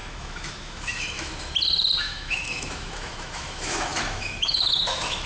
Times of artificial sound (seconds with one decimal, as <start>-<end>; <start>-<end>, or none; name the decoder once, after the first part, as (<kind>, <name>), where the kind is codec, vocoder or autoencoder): 0.0-1.3 (autoencoder, DAC-VAE); 2.0-5.3